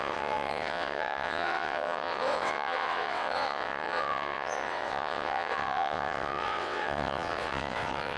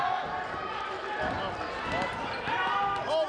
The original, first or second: second